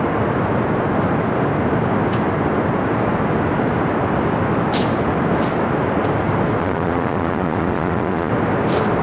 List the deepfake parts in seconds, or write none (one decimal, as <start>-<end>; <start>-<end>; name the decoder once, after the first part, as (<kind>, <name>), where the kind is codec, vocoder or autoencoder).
6.6-8.3 (vocoder, Vocos)